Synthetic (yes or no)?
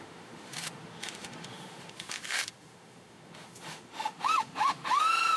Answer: yes